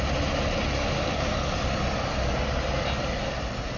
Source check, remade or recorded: recorded